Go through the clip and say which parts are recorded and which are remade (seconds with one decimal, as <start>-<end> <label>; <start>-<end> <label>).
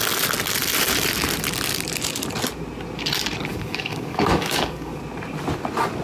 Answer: 0.0-3.5 recorded; 3.5-5.0 remade; 5.0-6.0 recorded